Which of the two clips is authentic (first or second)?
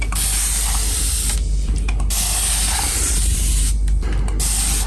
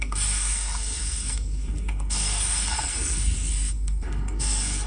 first